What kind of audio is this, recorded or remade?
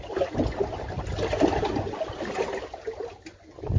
recorded